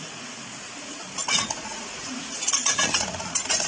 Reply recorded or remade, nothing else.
remade